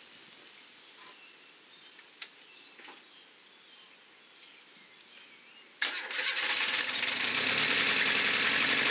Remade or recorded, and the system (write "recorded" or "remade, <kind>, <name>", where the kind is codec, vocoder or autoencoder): recorded